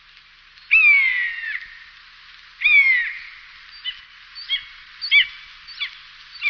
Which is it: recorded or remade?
recorded